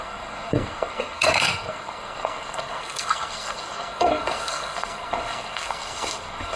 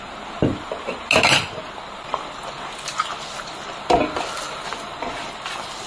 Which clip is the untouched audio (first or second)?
second